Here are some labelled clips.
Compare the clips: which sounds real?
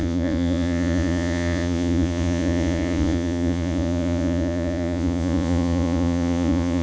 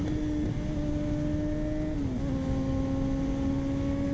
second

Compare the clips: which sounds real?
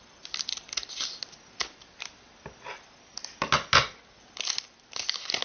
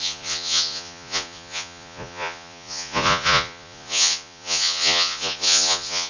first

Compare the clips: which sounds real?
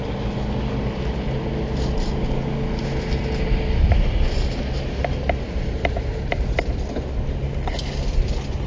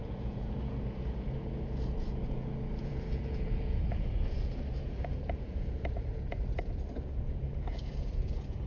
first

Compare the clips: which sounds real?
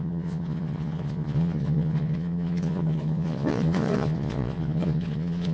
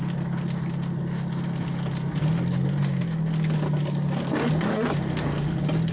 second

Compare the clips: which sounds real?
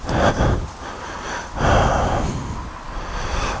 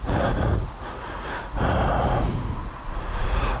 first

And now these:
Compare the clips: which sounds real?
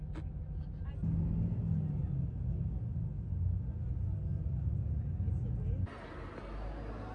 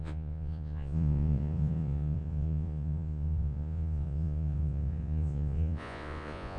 first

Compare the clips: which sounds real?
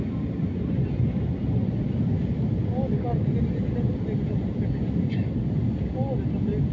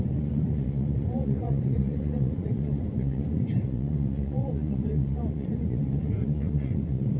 first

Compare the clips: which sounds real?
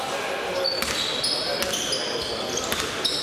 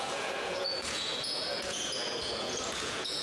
first